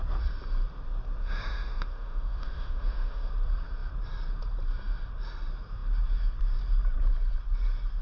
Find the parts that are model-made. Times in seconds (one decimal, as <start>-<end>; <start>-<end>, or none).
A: 1.2-3.3